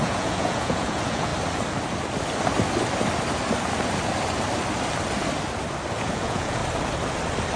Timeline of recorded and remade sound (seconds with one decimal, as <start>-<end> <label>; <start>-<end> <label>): 0.0-1.3 remade; 1.3-5.9 recorded; 5.9-6.6 remade; 6.6-7.6 recorded